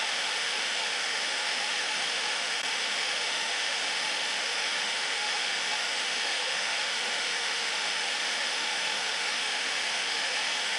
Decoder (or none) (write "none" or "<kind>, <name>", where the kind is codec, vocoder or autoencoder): autoencoder, DAC-VAE